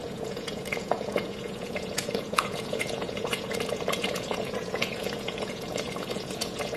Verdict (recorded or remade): remade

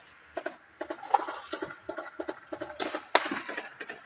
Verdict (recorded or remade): recorded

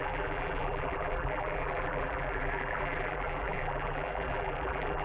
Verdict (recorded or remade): remade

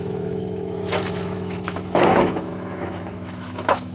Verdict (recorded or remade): remade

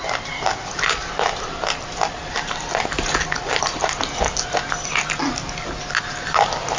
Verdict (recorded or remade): recorded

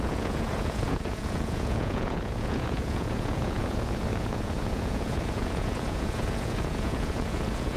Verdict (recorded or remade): remade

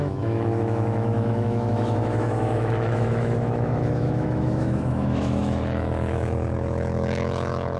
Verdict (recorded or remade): remade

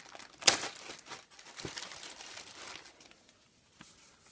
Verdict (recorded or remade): recorded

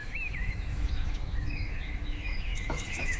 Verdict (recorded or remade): remade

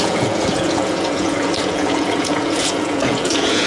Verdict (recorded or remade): remade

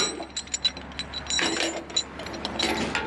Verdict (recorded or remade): recorded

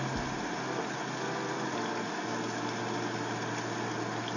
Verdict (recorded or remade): recorded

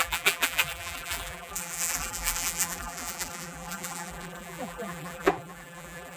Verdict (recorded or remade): remade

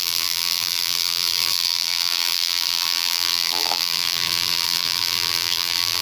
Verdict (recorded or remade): remade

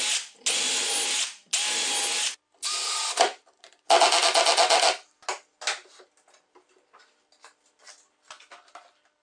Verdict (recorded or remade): recorded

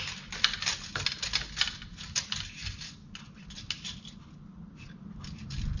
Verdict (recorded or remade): recorded